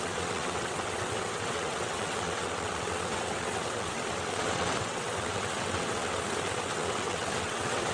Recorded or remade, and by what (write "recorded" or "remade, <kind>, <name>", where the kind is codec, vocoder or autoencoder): remade, vocoder, WaveNeXt